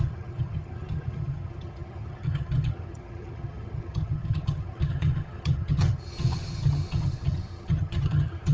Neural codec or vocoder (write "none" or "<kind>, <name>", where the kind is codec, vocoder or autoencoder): vocoder, HiFi-GAN